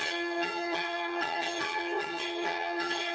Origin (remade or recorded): remade